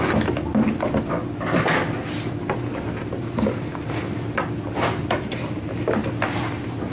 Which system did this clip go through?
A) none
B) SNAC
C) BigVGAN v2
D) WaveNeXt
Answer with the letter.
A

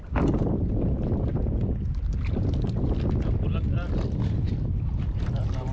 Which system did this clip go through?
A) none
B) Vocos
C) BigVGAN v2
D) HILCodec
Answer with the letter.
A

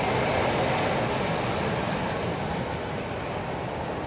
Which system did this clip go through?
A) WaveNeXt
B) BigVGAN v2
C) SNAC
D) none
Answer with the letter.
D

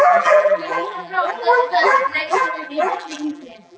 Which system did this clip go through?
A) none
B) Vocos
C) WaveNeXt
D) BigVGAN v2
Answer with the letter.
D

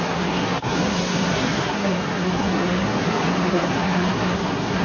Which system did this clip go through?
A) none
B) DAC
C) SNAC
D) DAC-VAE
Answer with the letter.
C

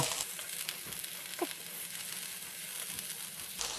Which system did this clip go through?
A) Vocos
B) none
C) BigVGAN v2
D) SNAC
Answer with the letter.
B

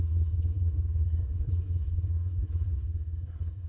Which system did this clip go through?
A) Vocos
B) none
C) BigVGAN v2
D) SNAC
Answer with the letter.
D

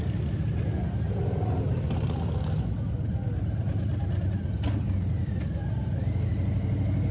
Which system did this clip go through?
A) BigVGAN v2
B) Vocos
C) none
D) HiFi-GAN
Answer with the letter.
C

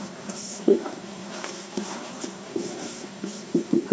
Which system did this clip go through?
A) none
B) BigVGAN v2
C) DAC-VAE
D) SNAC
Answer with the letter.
D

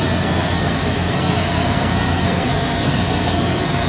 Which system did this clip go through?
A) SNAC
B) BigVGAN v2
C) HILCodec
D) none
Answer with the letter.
A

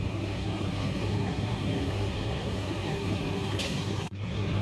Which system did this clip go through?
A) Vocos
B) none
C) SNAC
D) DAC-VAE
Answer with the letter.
C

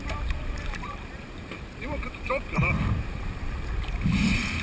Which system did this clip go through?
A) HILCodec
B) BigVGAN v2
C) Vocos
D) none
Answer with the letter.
B